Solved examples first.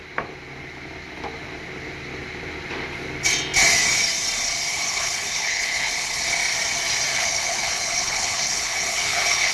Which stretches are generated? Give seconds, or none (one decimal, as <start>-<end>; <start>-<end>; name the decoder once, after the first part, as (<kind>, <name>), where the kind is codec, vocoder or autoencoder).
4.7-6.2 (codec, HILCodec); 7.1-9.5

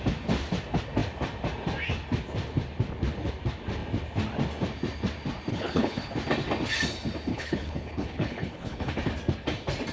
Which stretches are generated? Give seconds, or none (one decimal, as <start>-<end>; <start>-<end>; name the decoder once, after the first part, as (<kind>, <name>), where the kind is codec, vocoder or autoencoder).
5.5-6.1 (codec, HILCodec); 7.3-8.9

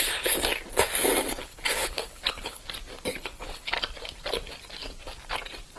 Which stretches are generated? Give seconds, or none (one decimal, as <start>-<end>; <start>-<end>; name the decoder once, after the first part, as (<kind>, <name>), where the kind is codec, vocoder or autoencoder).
1.4-2.6 (codec, HILCodec); 3.1-3.7

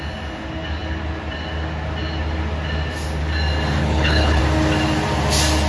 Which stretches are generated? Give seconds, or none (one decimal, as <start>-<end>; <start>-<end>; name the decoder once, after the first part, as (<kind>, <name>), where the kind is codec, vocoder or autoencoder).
3.8-4.4 (codec, HILCodec)